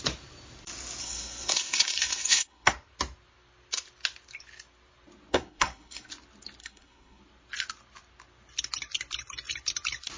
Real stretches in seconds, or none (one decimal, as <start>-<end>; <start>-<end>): 0.0-1.0; 2.7-5.3; 6.1-6.6; 7.2-10.2